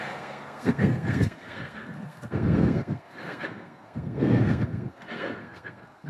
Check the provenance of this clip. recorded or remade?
remade